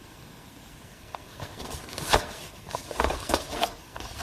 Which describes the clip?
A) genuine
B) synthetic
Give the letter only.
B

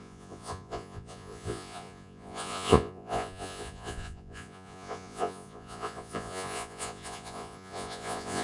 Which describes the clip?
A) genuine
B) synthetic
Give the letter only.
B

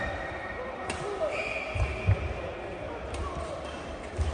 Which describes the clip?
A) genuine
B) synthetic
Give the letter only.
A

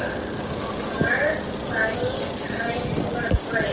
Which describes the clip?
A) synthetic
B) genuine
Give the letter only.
B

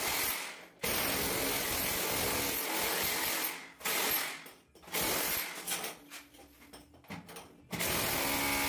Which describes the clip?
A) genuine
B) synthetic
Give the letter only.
A